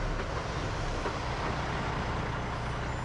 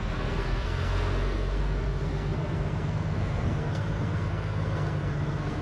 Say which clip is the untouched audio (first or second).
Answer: first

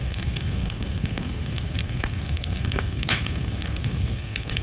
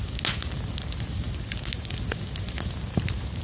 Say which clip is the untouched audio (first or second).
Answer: second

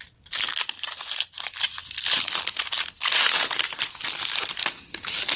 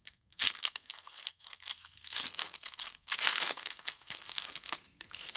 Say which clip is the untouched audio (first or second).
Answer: first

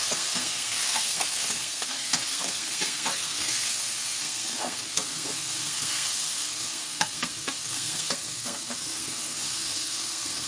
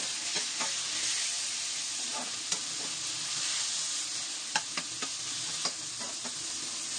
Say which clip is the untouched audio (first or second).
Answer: second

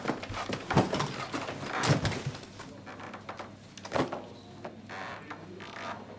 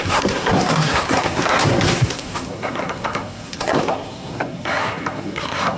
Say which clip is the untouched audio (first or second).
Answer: first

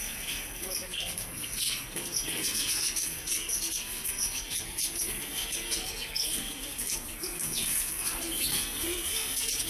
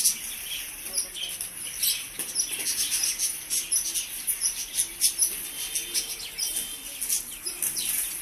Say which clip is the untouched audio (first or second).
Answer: second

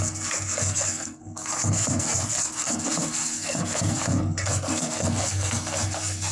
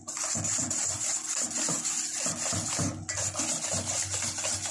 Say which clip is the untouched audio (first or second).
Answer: second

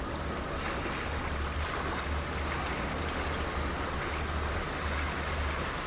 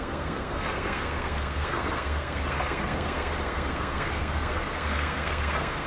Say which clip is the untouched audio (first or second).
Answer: first